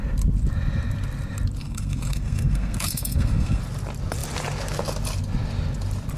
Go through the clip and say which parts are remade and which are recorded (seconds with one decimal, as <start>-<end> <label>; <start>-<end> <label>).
0.0-1.6 recorded; 1.6-3.6 remade; 3.6-6.2 recorded